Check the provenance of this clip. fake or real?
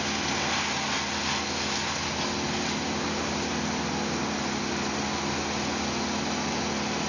real